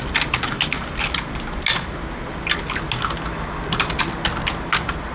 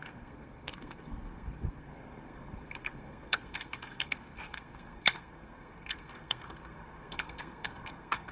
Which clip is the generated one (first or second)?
second